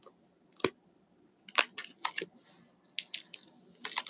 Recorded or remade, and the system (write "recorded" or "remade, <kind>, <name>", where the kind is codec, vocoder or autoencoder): recorded